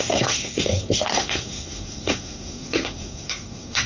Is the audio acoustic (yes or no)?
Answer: no